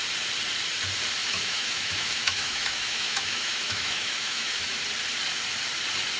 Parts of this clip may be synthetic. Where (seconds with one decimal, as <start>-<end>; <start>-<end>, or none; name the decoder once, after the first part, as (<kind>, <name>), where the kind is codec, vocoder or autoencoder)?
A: 1.2-4.8 (autoencoder, DAC-VAE)